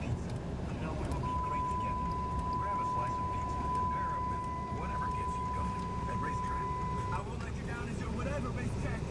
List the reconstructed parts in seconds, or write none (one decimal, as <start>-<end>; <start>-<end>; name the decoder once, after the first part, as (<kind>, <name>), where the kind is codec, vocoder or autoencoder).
none